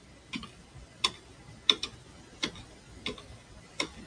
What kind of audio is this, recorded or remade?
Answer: recorded